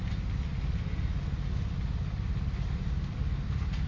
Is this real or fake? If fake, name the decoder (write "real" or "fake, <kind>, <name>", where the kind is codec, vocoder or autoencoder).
real